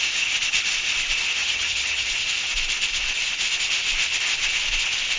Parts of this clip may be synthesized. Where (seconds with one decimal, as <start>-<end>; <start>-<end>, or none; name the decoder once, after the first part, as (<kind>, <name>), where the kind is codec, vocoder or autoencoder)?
1.4-2.1 (vocoder, HiFi-GAN)